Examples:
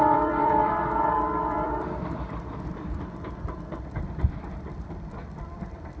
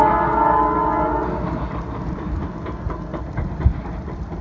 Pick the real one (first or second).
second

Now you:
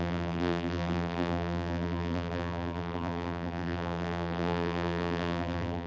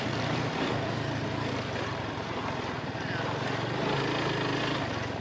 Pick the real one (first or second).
second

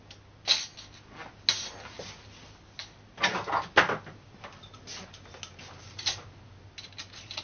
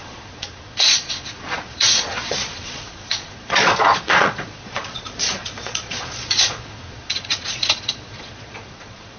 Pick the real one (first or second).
first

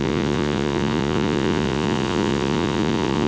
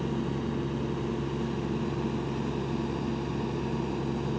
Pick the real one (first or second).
second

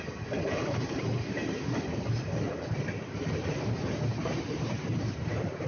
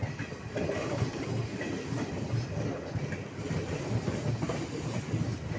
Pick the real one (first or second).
second